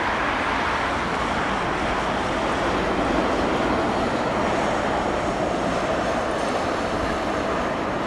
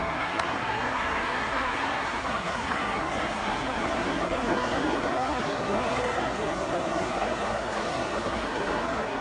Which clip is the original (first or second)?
first